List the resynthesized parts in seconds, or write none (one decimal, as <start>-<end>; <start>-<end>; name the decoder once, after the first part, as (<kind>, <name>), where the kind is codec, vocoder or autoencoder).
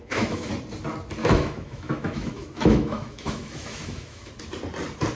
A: 0.0-0.5 (autoencoder, DAC-VAE); 1.2-4.3